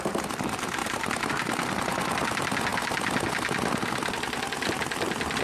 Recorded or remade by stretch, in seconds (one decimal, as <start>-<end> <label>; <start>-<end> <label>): 0.0-0.8 recorded; 0.8-1.3 remade; 1.3-5.4 recorded